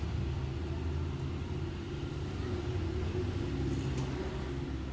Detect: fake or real real